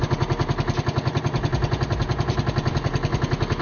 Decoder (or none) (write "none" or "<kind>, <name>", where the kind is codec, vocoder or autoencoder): none